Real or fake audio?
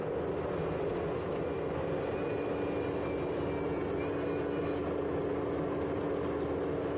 real